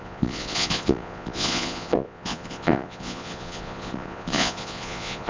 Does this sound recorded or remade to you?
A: remade